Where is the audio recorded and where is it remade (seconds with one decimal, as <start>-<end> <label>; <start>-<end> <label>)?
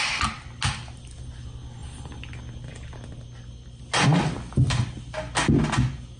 0.0-6.2 recorded